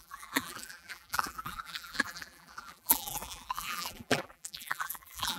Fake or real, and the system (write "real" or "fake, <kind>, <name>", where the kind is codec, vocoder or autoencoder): fake, vocoder, BigVGAN v2